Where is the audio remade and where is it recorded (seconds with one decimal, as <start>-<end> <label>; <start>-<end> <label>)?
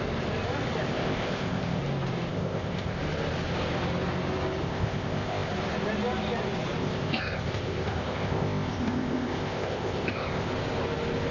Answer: 0.0-0.9 recorded; 0.9-1.8 remade; 1.8-2.3 recorded; 2.3-3.0 remade; 3.0-4.6 recorded; 4.6-5.5 remade; 5.5-6.8 recorded; 6.8-10.5 remade; 10.5-11.3 recorded